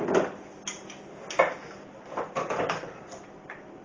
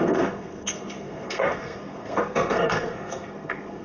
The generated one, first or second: second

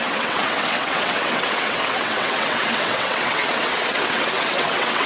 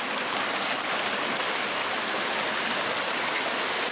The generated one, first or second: first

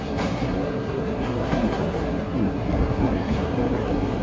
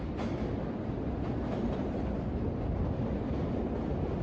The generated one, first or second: first